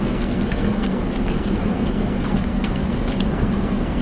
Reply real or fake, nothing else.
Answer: fake